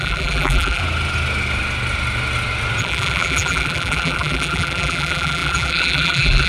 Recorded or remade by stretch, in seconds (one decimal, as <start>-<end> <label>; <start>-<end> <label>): 0.0-0.8 remade; 0.8-2.8 recorded; 2.8-6.5 remade